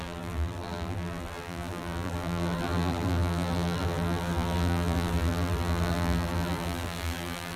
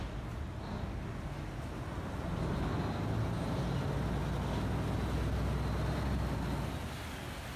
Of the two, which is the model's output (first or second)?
first